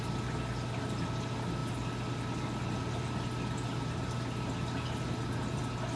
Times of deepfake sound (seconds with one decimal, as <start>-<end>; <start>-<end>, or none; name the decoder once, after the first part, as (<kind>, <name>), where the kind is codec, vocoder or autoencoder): none